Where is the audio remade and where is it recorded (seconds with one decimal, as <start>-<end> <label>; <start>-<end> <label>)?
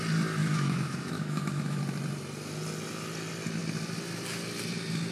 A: 0.0-0.4 recorded; 0.4-1.8 remade; 1.8-5.1 recorded